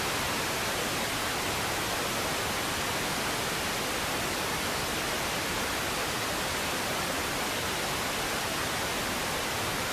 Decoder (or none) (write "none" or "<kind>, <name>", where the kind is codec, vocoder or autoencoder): none